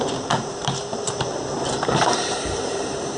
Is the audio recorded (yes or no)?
no